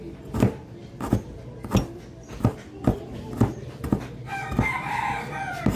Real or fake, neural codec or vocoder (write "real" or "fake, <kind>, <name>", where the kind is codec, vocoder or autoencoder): real